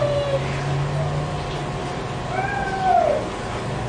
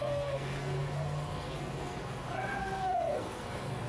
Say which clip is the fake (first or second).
second